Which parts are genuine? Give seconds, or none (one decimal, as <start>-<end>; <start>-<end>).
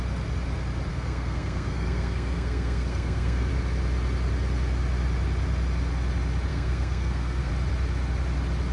0.0-0.9; 3.5-6.5; 7.5-8.7